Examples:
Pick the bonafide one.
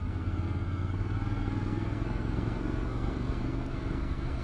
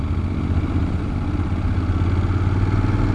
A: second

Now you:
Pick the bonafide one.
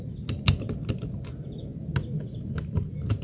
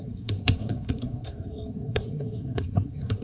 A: first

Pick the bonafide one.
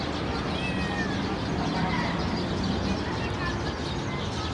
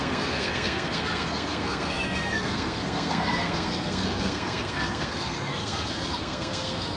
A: first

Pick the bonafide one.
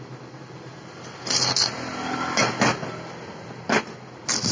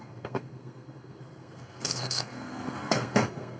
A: first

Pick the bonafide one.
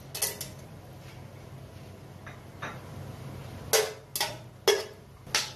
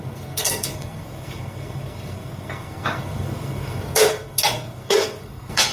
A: first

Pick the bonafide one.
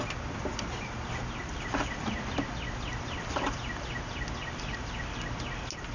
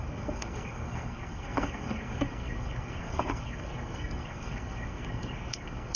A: first